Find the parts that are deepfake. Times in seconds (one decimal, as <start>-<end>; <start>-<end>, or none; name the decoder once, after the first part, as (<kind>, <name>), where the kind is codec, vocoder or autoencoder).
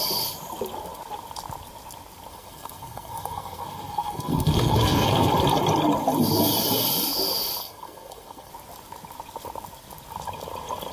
2.3-5.3 (codec, SNAC); 7.6-8.5